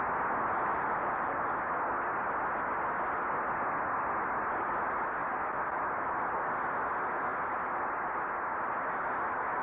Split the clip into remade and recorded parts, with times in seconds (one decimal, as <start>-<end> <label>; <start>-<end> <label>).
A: 0.0-0.7 recorded; 0.7-1.4 remade; 1.4-9.6 recorded